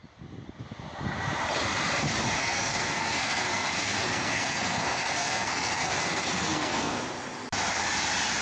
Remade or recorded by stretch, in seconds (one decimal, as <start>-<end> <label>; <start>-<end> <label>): 0.0-2.4 recorded; 2.4-7.0 remade; 7.0-8.4 recorded